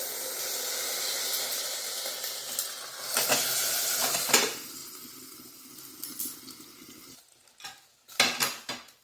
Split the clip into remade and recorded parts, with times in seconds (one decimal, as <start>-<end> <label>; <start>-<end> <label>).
0.0-9.0 recorded